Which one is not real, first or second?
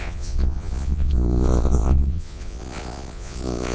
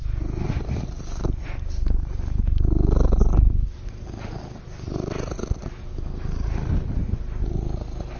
first